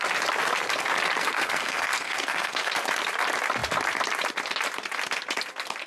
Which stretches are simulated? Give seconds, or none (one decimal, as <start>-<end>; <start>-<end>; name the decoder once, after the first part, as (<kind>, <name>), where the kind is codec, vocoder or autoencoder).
1.2-2.7 (codec, SNAC)